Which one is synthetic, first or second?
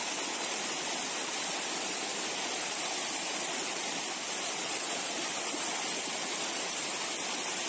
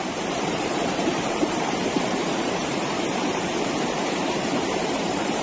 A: second